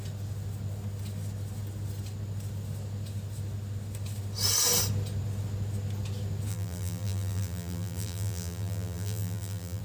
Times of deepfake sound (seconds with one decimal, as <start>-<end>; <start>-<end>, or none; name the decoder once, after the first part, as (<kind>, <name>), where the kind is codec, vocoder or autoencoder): 6.5-9.8 (vocoder, BigVGAN v2)